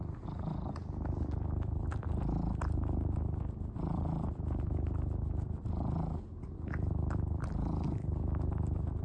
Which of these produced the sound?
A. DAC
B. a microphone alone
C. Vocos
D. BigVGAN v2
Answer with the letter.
B